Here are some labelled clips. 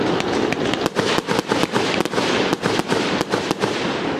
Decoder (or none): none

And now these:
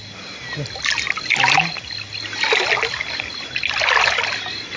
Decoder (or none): none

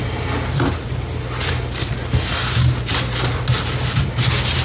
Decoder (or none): none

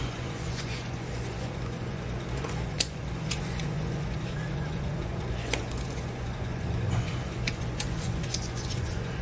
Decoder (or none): vocoder, Vocos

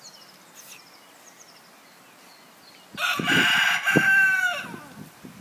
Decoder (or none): none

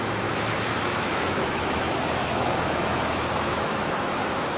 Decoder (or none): autoencoder, DAC-VAE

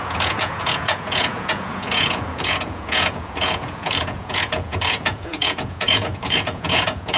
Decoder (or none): vocoder, Vocos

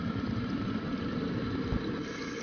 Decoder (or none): none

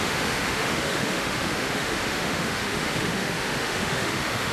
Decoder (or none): autoencoder, DAC-VAE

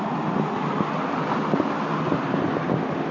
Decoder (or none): none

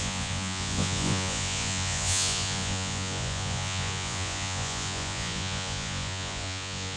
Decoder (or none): vocoder, Vocos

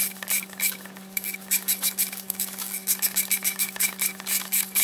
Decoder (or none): codec, DAC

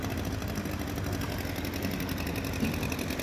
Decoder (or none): none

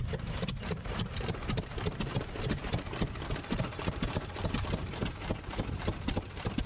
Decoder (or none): vocoder, BigVGAN v2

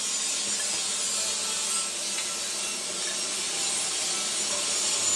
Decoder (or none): none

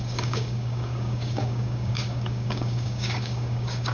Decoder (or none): codec, DAC